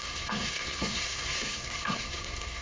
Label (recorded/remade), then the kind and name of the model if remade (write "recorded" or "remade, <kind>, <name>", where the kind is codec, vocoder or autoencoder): remade, codec, SNAC